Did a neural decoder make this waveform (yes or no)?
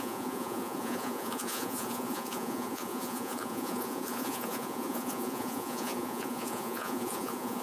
yes